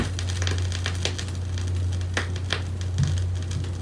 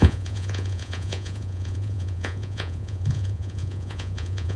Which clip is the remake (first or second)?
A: second